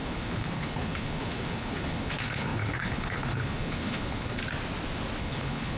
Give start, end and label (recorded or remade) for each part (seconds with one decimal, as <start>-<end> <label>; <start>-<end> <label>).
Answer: 0.0-4.4 remade; 4.4-5.2 recorded; 5.2-5.8 remade